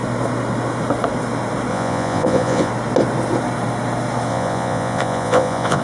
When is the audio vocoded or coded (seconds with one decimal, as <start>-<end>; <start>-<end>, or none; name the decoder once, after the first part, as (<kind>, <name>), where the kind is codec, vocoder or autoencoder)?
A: 1.7-2.7 (vocoder, Vocos); 4.3-5.8